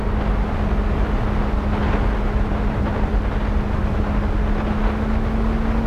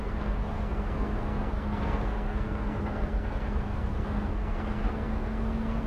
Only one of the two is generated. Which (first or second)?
second